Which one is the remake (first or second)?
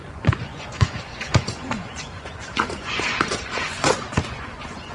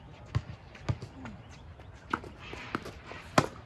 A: first